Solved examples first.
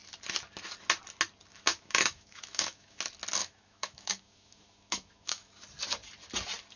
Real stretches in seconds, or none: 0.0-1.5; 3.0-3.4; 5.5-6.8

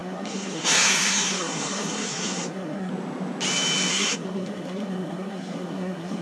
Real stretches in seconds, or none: 2.9-3.9

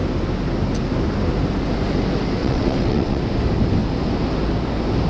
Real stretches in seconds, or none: 0.0-2.4; 3.2-5.1

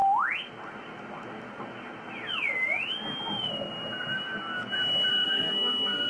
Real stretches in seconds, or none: 0.0-5.1

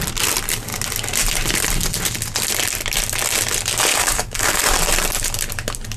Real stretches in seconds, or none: 0.0-3.9; 4.6-6.0

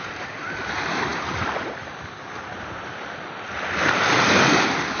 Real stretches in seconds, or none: 0.0-5.0